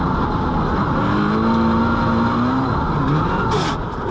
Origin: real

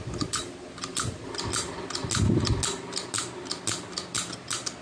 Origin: real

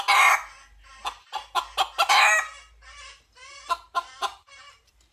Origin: real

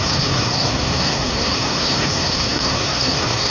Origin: fake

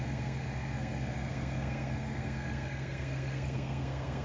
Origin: fake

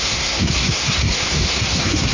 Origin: fake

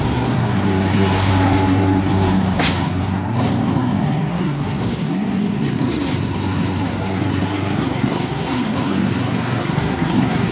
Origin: fake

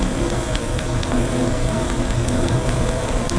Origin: fake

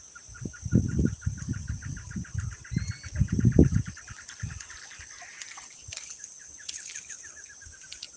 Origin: real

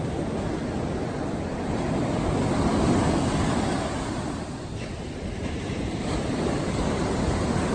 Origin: real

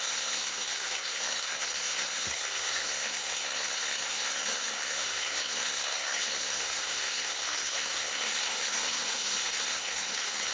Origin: fake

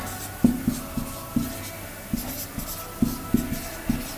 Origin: real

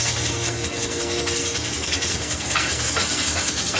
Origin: fake